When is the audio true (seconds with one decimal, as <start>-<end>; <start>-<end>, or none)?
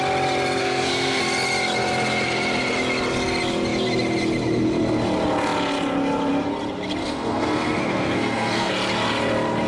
0.0-0.6; 1.2-7.0; 8.7-9.7